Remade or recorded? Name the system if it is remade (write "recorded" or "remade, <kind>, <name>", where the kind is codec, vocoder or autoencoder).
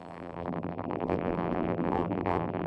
remade, vocoder, BigVGAN v2